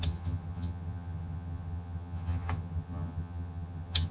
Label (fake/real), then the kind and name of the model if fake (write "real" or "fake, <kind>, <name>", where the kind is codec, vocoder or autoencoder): fake, vocoder, HiFi-GAN